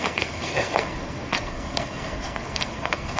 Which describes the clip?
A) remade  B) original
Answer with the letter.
A